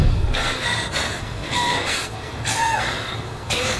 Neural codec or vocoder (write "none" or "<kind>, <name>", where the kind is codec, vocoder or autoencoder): codec, SNAC